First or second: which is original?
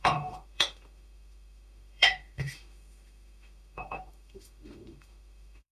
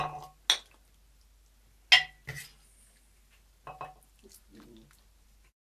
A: second